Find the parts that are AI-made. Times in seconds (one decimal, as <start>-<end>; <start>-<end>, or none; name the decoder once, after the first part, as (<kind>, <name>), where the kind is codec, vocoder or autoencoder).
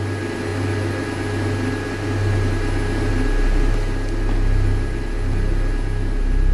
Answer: none